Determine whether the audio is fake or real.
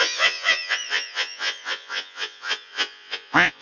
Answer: fake